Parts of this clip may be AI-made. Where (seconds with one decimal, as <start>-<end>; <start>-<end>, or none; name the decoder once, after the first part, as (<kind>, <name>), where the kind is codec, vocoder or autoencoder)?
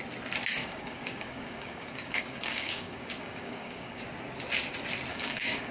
0.6-4.0 (codec, DAC); 5.1-5.7